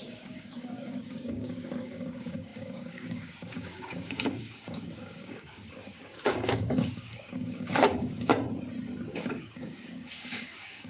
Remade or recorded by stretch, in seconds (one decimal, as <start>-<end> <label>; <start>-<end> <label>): 0.0-8.3 remade; 8.3-9.1 recorded; 9.1-10.9 remade